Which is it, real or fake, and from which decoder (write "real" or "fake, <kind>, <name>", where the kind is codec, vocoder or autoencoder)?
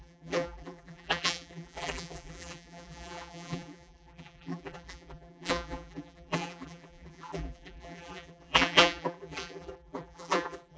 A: fake, vocoder, BigVGAN v2